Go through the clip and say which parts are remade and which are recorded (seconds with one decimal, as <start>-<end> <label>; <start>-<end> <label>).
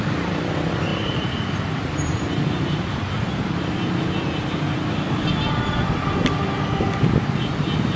0.0-0.9 recorded; 0.9-4.0 remade; 4.0-8.0 recorded